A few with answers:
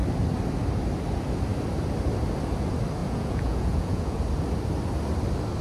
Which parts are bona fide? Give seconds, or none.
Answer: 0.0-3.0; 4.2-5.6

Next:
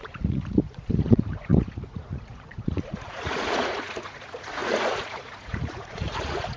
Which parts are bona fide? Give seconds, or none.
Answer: none

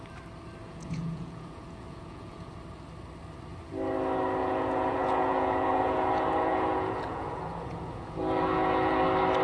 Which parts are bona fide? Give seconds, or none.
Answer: 0.0-0.6; 2.5-4.4; 9.0-9.4

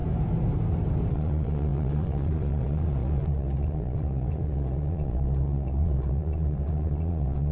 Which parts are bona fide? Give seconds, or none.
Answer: 0.0-1.1

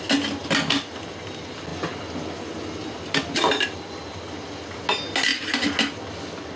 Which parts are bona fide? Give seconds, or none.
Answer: 0.0-6.6